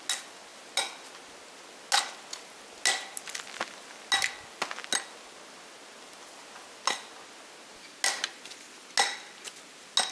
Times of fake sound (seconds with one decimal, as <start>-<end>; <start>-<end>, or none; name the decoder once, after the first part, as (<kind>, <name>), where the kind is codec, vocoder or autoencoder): none